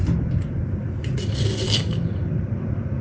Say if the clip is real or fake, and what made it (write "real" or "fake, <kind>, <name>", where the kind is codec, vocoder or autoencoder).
real